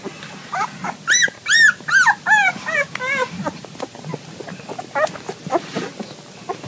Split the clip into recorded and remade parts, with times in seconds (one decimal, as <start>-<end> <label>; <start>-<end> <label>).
0.0-6.7 recorded